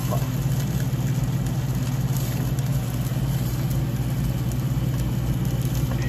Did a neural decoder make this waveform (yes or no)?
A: no